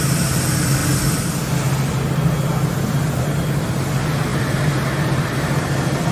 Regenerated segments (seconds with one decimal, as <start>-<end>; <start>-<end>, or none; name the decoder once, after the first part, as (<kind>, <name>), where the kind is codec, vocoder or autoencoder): 0.0-0.8 (vocoder, BigVGAN v2); 3.2-6.1